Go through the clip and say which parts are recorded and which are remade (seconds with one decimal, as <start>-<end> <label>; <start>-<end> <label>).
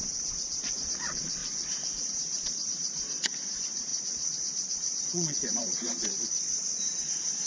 0.0-1.4 remade; 1.4-2.1 recorded; 2.1-7.5 remade